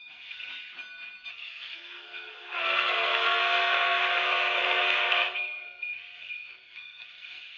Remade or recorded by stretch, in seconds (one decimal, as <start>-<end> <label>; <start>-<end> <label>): 0.0-0.5 remade; 0.5-1.3 recorded; 1.3-7.6 remade